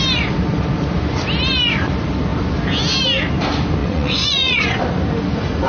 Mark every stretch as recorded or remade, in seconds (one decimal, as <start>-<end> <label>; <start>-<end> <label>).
0.0-3.8 recorded; 3.8-4.8 remade; 4.8-5.7 recorded